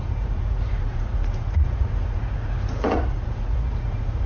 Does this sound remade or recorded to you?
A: remade